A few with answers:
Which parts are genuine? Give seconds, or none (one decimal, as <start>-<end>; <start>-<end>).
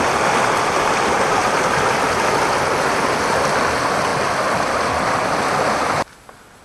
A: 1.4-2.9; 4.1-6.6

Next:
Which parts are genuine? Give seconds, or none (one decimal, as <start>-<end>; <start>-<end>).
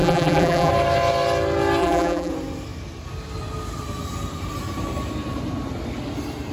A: 0.7-1.8; 2.3-6.5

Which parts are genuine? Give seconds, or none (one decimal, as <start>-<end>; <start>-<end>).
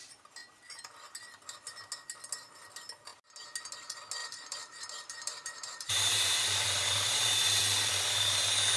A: 0.0-4.2; 8.0-8.8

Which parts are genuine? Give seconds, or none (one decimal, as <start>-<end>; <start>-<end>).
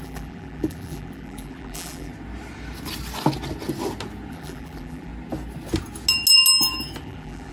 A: 2.1-4.3; 5.1-7.0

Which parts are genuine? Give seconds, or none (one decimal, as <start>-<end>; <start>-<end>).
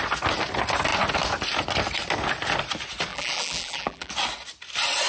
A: 0.0-3.1; 4.1-5.1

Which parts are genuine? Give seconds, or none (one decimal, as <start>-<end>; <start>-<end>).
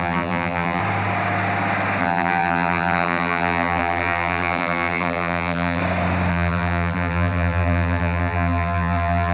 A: 0.8-2.0; 5.8-6.3